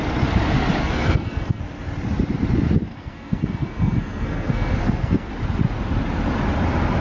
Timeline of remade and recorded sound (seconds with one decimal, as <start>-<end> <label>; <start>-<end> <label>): 0.0-0.8 recorded; 0.8-1.6 remade; 1.6-2.9 recorded; 2.9-5.3 remade; 5.3-7.0 recorded